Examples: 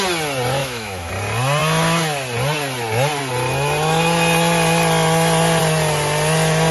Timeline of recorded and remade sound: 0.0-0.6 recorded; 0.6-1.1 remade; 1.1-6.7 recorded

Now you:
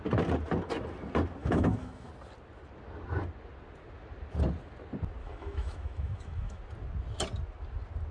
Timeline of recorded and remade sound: 0.0-1.4 recorded; 1.4-2.1 remade; 2.1-5.2 recorded; 5.2-6.6 remade; 6.6-8.1 recorded

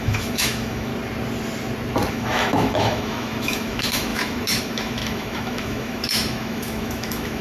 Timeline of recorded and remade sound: 0.0-0.9 remade; 0.9-2.1 recorded; 2.1-7.4 remade

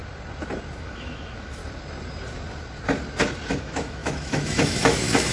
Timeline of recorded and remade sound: 0.0-0.8 recorded; 0.8-1.6 remade; 1.6-3.6 recorded; 3.6-5.3 remade